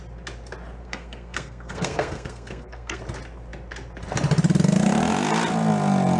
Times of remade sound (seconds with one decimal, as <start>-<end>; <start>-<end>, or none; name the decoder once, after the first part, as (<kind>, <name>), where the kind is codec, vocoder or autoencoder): 0.8-3.0 (codec, SNAC)